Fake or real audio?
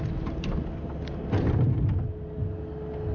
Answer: real